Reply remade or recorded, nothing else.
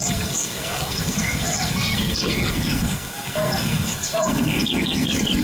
remade